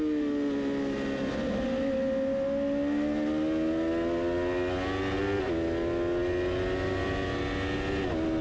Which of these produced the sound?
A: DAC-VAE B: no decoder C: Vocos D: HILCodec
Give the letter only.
B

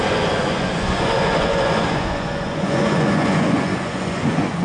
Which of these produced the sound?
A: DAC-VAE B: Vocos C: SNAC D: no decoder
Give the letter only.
B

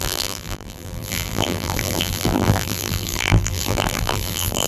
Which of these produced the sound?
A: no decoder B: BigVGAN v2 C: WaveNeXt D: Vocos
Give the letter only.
B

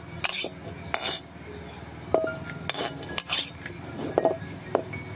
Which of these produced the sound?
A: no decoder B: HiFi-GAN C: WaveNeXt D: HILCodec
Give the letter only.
A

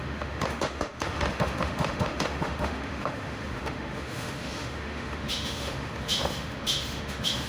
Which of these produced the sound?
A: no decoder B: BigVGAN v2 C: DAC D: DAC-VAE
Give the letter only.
D